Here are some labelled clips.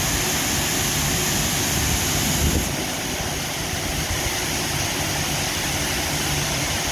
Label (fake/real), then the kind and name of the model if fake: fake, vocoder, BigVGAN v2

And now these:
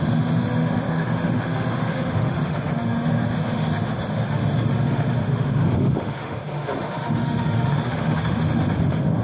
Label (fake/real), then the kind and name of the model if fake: fake, autoencoder, DAC-VAE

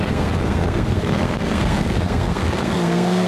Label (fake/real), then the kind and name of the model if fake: fake, codec, SNAC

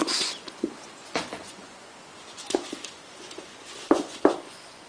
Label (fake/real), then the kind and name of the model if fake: fake, vocoder, Vocos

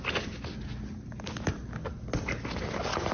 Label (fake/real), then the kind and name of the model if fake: real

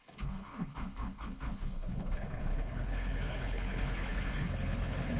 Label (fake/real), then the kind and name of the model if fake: fake, codec, HILCodec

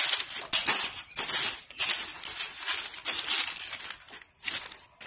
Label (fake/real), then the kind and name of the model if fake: real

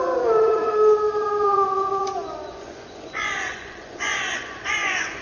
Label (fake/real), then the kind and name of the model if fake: fake, vocoder, Vocos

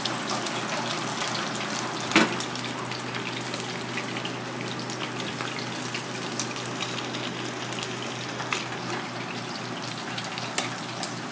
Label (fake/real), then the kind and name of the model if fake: real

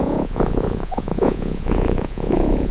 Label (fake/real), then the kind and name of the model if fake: fake, vocoder, Vocos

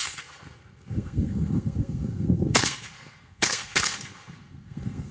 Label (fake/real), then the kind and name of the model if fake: fake, codec, SNAC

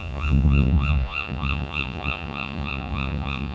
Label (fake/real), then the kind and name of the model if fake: fake, vocoder, Vocos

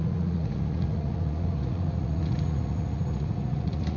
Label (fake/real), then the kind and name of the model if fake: fake, vocoder, Vocos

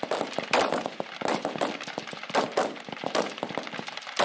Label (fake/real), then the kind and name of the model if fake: real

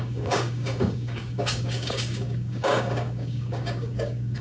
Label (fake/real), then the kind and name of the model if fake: fake, codec, DAC